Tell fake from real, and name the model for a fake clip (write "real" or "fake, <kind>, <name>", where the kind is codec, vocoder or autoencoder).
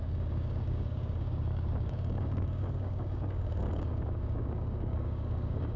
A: fake, codec, DAC